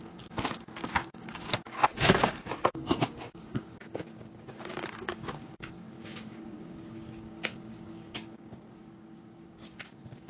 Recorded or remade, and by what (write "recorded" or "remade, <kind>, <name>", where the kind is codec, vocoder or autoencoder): remade, codec, DAC